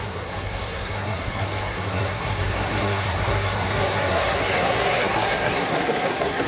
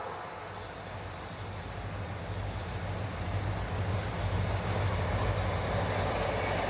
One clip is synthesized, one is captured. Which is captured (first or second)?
second